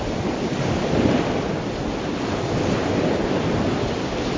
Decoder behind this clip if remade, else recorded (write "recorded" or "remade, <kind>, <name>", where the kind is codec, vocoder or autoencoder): recorded